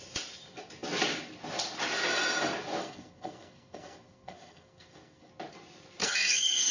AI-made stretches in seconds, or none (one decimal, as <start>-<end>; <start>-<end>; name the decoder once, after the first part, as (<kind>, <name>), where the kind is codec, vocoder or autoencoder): 2.8-5.3 (codec, SNAC); 6.0-6.7